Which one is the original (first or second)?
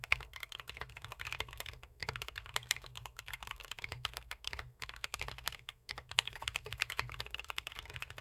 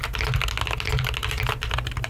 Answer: second